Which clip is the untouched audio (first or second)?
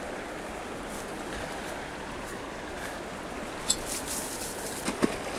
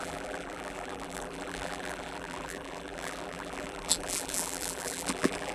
first